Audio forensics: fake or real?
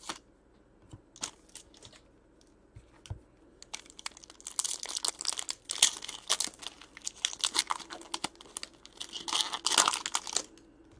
real